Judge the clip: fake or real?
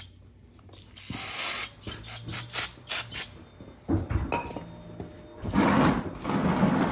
real